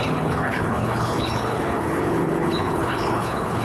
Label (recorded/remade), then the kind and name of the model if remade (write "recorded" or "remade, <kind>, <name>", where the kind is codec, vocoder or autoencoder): remade, codec, HILCodec